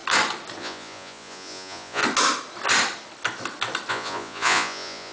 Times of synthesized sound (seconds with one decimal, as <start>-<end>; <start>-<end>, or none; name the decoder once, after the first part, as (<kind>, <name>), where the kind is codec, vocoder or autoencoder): 0.6-2.0 (vocoder, Vocos); 3.9-5.1